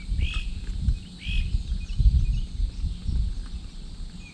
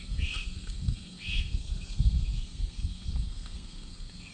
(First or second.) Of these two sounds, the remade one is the second